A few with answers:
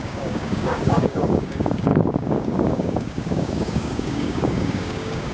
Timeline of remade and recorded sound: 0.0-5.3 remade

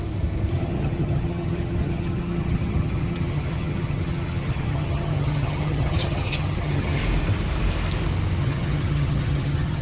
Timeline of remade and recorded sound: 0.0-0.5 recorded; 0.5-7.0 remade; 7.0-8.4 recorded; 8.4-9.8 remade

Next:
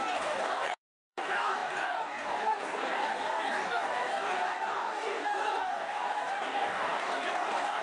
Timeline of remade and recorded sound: 0.0-7.8 remade

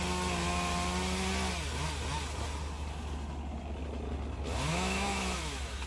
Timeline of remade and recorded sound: 0.0-4.7 recorded; 4.7-5.9 remade

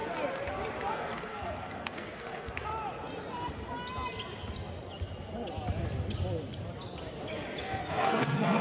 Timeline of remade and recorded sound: 0.0-0.9 recorded; 0.9-2.7 remade; 2.7-7.6 recorded; 7.6-8.6 remade